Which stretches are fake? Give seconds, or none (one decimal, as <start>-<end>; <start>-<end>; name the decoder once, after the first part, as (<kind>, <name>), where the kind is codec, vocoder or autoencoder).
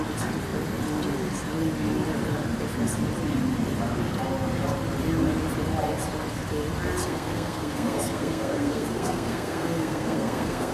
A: 7.0-10.7 (codec, SNAC)